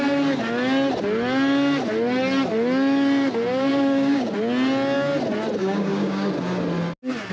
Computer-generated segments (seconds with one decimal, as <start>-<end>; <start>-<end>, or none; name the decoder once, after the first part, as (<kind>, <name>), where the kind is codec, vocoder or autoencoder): 3.7-4.3 (codec, DAC); 5.6-6.3